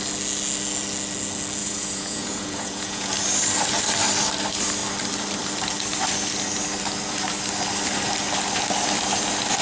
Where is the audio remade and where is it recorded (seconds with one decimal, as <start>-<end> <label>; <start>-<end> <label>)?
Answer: 0.0-1.6 recorded; 1.6-3.1 remade; 3.1-9.6 recorded